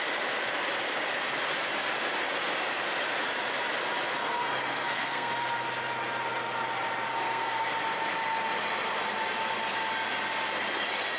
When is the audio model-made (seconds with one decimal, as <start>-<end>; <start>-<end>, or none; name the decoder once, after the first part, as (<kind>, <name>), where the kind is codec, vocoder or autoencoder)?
4.2-5.3 (codec, SNAC); 7.1-7.6